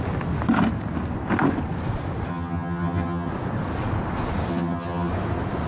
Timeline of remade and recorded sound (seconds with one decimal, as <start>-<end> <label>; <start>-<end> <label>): 0.0-2.3 recorded; 2.3-3.3 remade; 3.3-4.5 recorded; 4.5-5.1 remade; 5.1-5.7 recorded